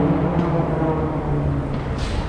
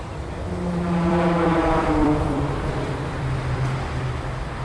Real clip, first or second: first